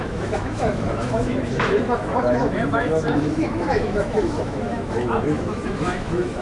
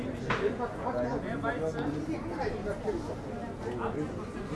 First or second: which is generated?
first